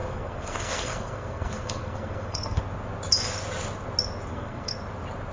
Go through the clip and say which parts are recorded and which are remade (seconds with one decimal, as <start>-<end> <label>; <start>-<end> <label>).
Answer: 0.0-2.6 remade; 2.6-4.3 recorded; 4.3-4.8 remade; 4.8-5.3 recorded